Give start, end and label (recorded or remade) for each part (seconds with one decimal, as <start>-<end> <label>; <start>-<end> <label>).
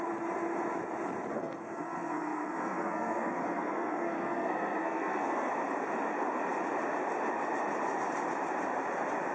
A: 0.0-1.3 recorded; 1.3-5.5 remade; 5.5-9.3 recorded